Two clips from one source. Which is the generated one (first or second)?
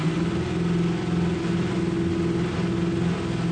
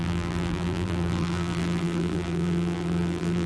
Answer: second